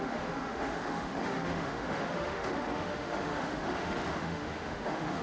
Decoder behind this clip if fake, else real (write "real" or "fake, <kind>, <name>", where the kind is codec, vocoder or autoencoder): fake, autoencoder, DAC-VAE